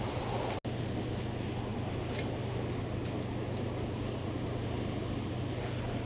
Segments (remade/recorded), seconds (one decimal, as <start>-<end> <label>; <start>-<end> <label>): 0.0-6.1 recorded